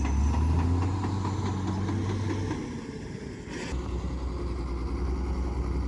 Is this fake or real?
real